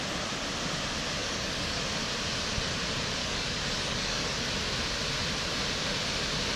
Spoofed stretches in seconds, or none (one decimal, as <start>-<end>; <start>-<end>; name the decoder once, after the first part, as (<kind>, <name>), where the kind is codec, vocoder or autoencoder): 1.2-1.8 (codec, DAC); 3.2-4.5